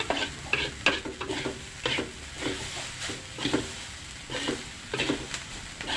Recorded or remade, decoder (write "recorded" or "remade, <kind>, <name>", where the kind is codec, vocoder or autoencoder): recorded